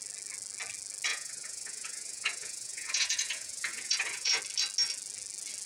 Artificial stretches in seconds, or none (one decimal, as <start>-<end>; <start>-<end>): 1.1-4.4